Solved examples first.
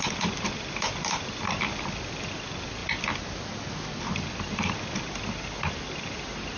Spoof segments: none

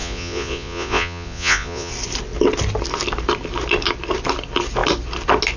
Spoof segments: 0.0-1.9 (vocoder, Vocos)

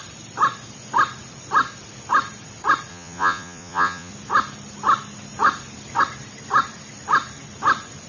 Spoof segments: 2.9-4.1 (vocoder, Vocos)

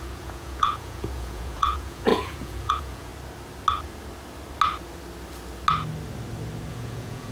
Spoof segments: 0.0-3.1 (vocoder, Vocos); 6.7-7.3